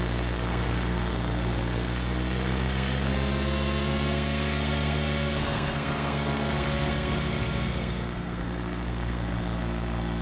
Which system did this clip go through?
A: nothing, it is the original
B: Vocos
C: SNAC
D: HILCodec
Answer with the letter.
C